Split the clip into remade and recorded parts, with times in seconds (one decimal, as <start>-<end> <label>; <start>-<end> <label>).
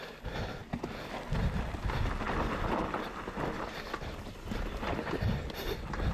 0.0-6.1 recorded